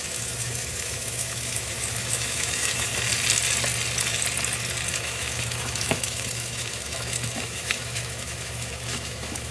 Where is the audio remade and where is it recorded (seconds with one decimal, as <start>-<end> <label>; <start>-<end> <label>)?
0.0-2.9 remade; 2.9-4.9 recorded; 4.9-9.5 remade